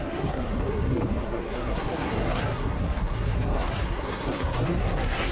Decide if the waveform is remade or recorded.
remade